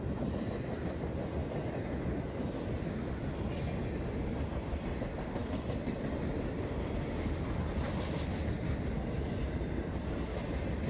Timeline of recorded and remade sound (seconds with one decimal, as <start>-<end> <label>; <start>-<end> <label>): 0.0-10.9 recorded